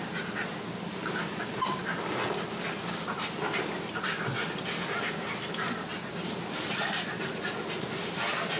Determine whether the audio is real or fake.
real